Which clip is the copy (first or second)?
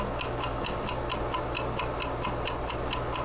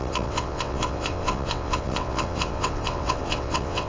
second